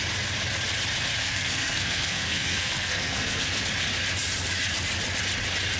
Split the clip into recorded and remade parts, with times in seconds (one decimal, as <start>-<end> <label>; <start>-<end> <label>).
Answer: 0.0-1.2 recorded; 1.2-3.6 remade; 3.6-5.8 recorded